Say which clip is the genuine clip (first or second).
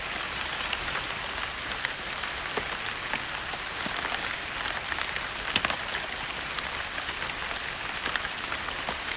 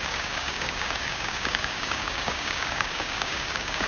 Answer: first